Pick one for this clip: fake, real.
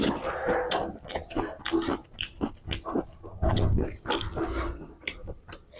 real